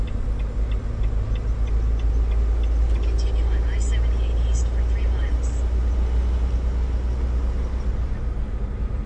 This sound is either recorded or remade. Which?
recorded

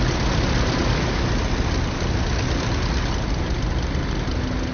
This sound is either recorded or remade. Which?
recorded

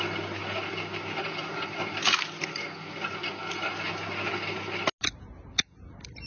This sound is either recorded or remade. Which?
recorded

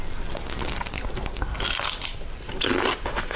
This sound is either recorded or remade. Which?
recorded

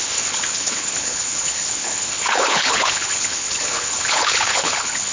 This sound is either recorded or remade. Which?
remade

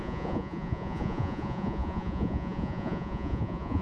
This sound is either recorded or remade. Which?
remade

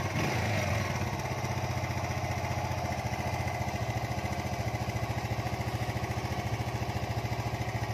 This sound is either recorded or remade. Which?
recorded